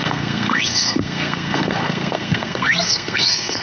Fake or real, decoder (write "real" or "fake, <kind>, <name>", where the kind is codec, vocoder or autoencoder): fake, codec, SNAC